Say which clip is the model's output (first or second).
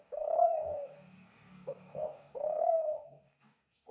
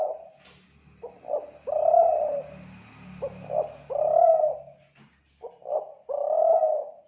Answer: first